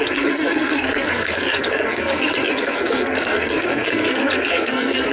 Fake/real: fake